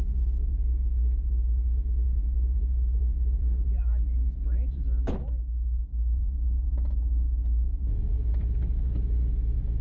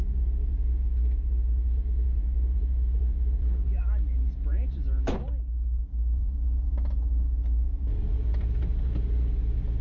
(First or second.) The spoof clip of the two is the first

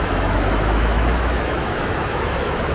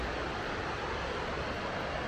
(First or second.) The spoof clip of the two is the first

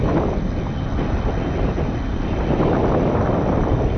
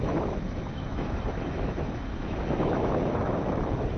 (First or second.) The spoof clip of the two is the second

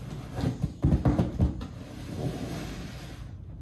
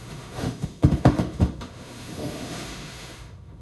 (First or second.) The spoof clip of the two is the second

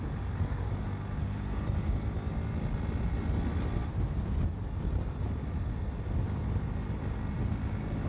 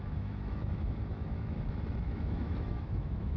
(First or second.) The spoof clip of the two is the second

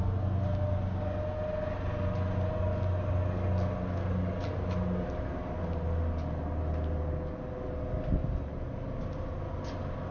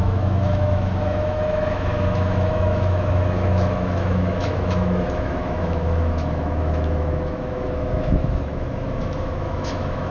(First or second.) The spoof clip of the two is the second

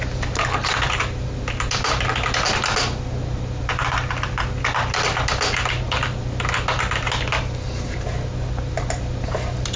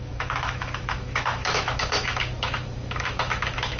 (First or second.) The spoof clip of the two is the second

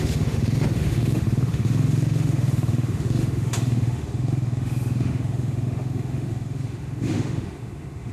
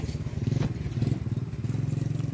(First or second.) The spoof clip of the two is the first